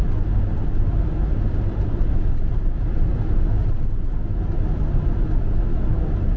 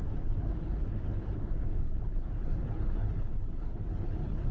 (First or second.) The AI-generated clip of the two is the second